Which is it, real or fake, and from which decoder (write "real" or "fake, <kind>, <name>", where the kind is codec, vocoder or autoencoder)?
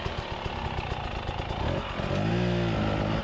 real